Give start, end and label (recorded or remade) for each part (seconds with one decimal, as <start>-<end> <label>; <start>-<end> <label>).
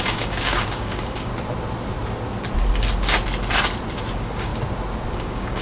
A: 0.0-1.3 remade; 1.3-4.1 recorded; 4.1-4.5 remade; 4.5-5.1 recorded; 5.1-5.6 remade